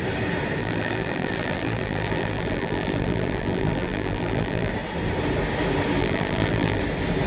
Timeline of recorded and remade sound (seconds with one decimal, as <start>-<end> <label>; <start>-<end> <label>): 0.0-0.6 recorded; 0.6-4.7 remade; 4.7-6.0 recorded; 6.0-6.8 remade; 6.8-7.3 recorded

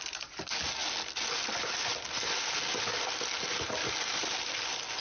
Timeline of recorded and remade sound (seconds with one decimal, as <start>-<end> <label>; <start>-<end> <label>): 0.0-5.0 recorded

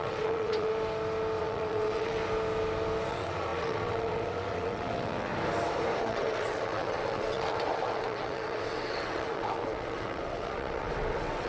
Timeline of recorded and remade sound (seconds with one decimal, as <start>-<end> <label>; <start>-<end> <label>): 0.0-0.7 remade; 0.7-1.4 recorded; 1.4-2.2 remade; 2.2-3.1 recorded; 3.1-5.3 remade; 5.3-6.0 recorded; 6.0-11.5 remade

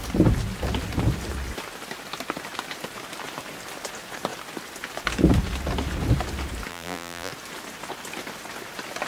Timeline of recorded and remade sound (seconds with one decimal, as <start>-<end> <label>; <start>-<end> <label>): 0.0-6.7 recorded; 6.7-7.3 remade; 7.3-9.1 recorded

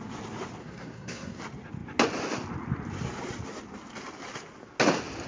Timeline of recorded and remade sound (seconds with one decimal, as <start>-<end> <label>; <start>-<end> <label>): 0.0-0.6 recorded; 0.6-1.4 remade; 1.4-5.3 recorded

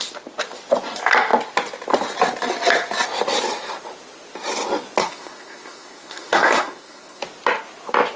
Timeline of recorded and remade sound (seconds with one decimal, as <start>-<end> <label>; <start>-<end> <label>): 0.0-5.0 recorded; 5.0-7.2 remade; 7.2-8.2 recorded

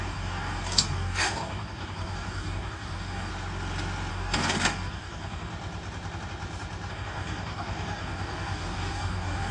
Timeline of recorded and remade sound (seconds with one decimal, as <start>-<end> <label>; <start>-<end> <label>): 0.0-3.3 remade; 3.3-4.1 recorded; 4.1-5.5 remade; 5.5-6.9 recorded; 6.9-9.5 remade

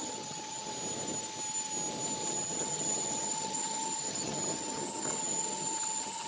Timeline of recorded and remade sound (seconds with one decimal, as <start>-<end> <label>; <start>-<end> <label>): 0.0-0.7 remade; 0.7-2.2 recorded; 2.2-6.3 remade